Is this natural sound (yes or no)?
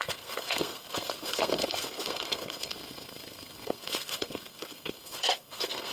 no